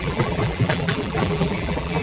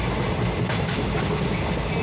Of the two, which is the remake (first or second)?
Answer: first